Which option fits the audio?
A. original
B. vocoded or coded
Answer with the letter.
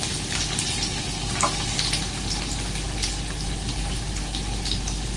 A